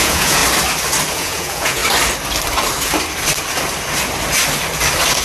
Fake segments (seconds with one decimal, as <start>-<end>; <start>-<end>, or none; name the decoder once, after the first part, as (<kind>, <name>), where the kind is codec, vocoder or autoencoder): 0.0-0.4 (vocoder, Vocos); 1.1-1.8